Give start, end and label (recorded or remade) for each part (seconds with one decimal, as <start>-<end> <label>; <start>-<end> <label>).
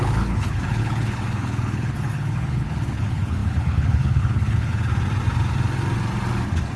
0.0-4.9 remade; 4.9-6.8 recorded